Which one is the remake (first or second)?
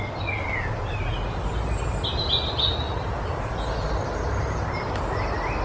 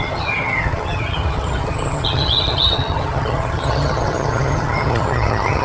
second